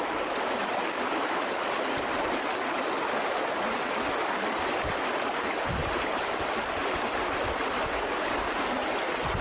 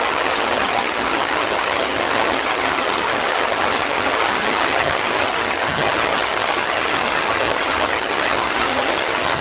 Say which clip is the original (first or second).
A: first